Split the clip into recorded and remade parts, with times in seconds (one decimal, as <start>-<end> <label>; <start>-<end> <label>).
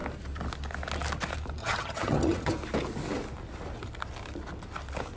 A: 0.0-1.6 recorded; 1.6-2.5 remade; 2.5-5.2 recorded